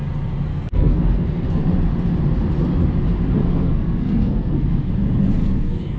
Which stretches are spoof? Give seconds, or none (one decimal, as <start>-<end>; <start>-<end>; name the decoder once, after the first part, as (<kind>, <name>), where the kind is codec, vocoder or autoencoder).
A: 0.5-1.6 (codec, SNAC); 3.4-4.9; 5.4-6.0